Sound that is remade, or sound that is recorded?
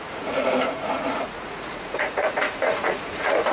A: remade